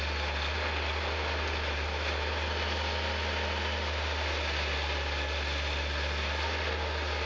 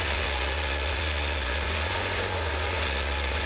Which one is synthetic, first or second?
second